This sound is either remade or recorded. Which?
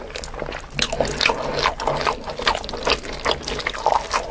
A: recorded